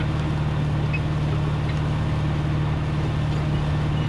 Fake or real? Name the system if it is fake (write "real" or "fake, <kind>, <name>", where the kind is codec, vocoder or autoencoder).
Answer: real